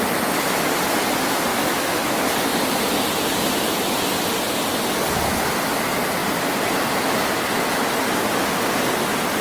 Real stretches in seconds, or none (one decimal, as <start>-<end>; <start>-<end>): 0.0-1.5; 2.1-9.4